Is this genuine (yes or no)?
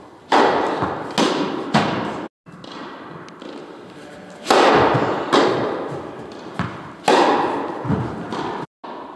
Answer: yes